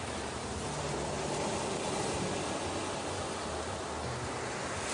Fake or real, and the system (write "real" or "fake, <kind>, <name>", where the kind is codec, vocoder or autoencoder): real